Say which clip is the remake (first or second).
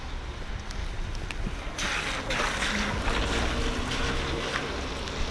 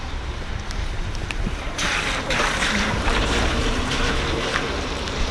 second